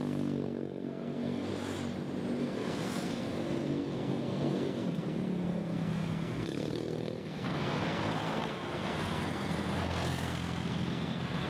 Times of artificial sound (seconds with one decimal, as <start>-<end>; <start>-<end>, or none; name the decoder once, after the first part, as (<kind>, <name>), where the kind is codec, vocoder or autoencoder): 0.0-1.5 (codec, SNAC); 2.4-11.5